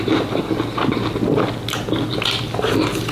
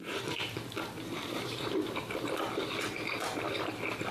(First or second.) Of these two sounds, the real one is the first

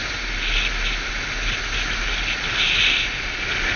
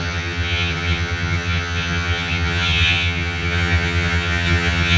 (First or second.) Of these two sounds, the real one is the first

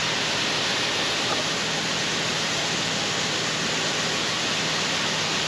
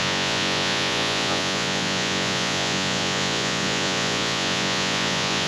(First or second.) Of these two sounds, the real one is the first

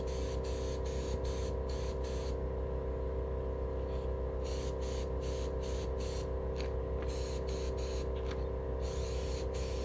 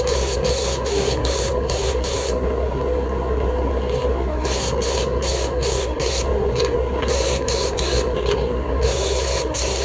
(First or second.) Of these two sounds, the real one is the first